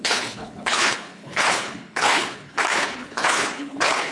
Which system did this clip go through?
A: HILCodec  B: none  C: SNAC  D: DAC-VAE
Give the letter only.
A